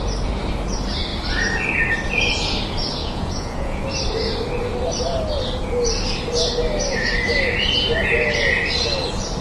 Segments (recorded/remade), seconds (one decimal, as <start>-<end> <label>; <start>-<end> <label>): 0.0-3.0 recorded; 3.0-3.8 remade; 3.8-9.4 recorded